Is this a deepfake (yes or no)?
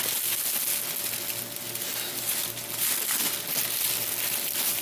no